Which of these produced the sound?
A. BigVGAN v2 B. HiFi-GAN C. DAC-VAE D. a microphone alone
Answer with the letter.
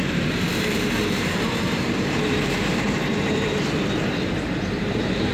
A